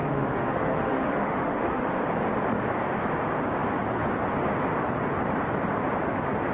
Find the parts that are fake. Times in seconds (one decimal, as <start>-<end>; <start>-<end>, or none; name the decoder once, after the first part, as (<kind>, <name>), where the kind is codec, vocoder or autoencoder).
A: 0.0-2.0 (autoencoder, DAC-VAE)